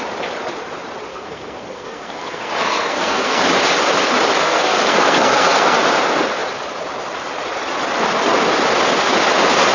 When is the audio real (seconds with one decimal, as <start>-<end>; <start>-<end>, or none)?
0.0-1.1; 3.4-4.4; 5.8-9.7